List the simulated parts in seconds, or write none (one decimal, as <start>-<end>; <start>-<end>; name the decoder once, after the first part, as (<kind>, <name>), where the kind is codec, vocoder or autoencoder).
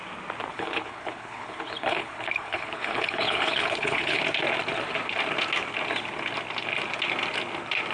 0.5-4.2 (codec, HILCodec)